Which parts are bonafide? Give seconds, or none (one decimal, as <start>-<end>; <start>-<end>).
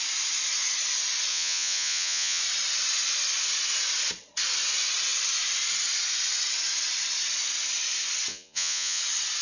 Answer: 0.0-1.3; 2.4-8.3; 9.0-9.4